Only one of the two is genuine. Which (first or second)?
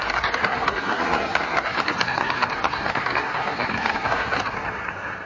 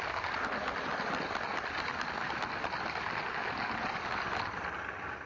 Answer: second